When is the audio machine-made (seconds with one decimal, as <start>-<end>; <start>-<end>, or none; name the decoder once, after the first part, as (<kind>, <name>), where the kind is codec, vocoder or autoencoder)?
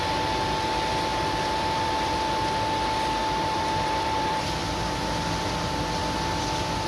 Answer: 1.1-2.1 (vocoder, BigVGAN v2); 3.2-4.8